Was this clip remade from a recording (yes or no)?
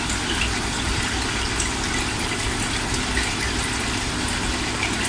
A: no